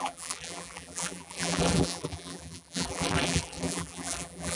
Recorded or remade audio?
remade